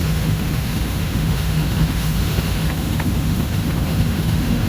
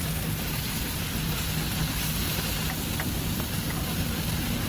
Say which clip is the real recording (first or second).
second